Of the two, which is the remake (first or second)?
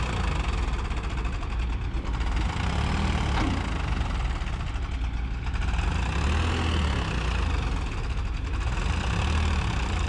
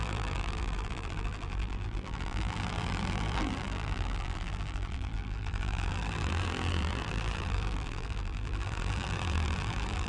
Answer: second